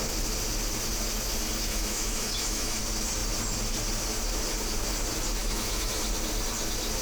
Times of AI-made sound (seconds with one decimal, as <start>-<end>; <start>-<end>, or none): 1.7-2.8; 5.4-6.1